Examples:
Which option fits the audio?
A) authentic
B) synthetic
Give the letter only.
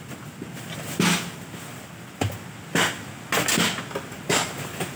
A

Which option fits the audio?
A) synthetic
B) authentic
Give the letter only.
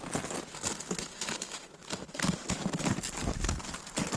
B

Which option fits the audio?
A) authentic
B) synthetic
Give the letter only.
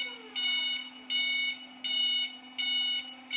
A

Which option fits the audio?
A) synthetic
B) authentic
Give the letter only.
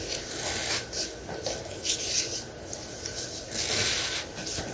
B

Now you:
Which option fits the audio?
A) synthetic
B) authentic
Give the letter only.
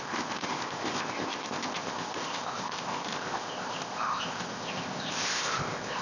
A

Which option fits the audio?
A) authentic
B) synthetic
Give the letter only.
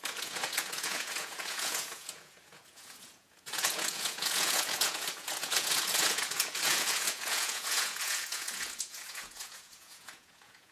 B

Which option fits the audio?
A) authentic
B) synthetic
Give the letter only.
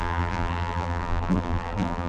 B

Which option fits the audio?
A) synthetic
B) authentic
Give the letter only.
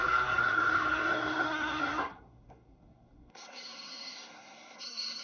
A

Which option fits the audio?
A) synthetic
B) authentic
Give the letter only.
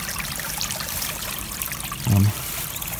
B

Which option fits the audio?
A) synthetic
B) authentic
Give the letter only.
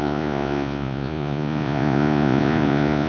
A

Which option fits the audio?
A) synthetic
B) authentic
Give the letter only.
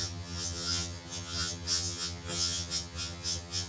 A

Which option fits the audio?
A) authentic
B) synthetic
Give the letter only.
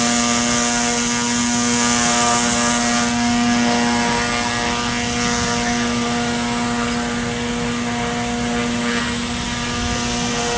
A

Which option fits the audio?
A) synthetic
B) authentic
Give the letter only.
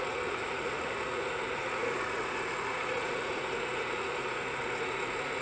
A